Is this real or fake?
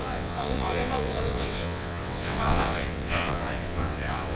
fake